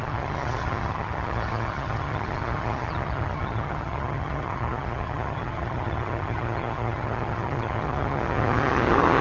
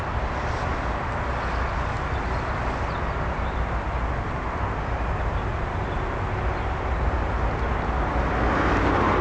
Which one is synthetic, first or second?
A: first